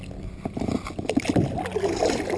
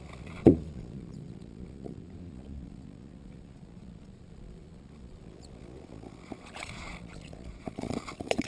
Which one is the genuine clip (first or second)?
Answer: first